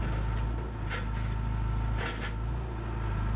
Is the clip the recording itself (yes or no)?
yes